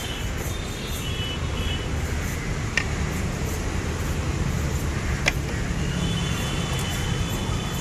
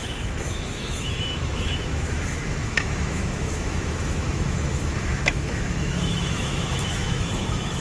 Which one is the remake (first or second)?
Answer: second